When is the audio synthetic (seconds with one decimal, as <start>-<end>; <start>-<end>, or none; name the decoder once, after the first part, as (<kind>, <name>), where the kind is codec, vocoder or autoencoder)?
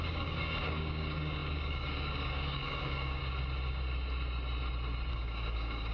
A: 0.0-3.2 (codec, DAC); 5.1-5.9